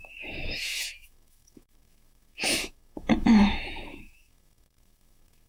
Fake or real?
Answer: fake